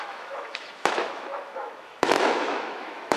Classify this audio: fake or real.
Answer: fake